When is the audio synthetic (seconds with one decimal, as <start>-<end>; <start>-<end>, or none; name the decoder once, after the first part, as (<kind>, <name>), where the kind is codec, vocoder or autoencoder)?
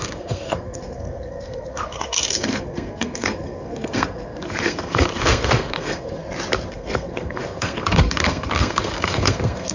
0.0-6.2 (codec, SNAC); 6.7-9.7